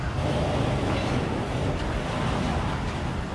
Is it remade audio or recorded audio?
recorded